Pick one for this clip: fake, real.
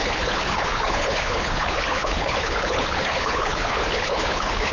fake